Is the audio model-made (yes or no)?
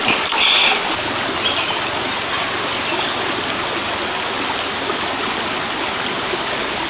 no